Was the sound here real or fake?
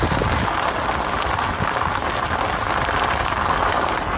real